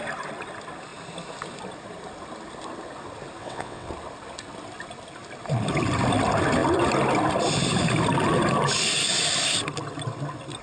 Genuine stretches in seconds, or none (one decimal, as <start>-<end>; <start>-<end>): 0.0-3.4; 3.9-10.6

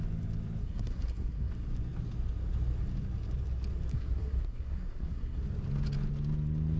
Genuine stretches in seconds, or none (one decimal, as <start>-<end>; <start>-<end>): 0.0-0.6; 1.5-3.9; 5.4-6.8

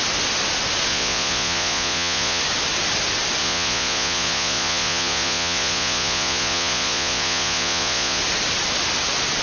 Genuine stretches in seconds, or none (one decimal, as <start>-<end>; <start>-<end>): 0.0-0.9; 2.4-3.4; 8.2-9.4

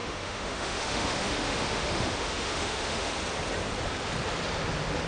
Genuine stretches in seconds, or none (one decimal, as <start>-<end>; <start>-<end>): 3.1-5.1

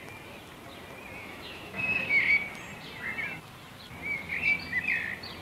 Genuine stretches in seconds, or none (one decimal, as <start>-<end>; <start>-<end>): 0.0-1.2; 2.2-5.4

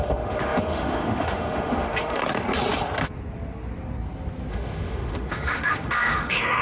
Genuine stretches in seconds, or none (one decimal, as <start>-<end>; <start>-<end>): 2.2-4.5

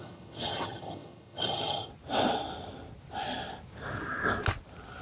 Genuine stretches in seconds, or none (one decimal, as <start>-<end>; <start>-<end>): 1.9-5.0

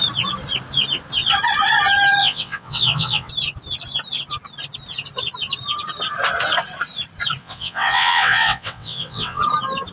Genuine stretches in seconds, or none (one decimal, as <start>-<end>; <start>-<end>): 0.0-2.2; 3.3-7.4; 9.4-9.9